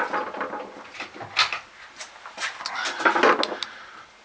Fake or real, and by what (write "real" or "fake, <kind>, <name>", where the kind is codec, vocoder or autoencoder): real